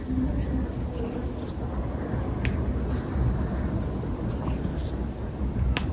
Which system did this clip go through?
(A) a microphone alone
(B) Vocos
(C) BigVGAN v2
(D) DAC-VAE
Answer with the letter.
A